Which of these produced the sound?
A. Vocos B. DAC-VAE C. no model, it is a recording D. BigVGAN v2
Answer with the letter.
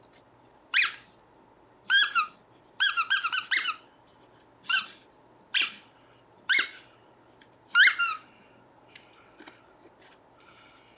C